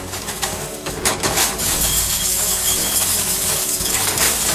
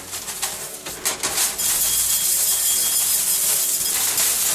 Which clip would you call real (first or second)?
second